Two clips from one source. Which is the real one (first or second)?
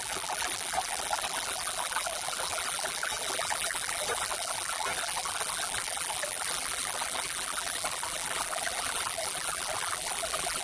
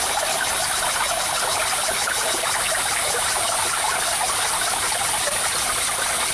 second